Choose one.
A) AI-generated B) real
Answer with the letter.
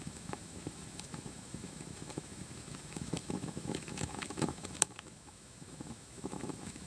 A